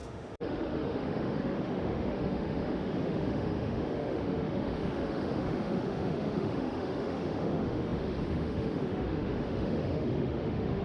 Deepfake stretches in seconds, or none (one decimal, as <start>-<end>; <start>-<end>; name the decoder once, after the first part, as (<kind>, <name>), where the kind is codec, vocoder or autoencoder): 0.0-10.8 (autoencoder, DAC-VAE)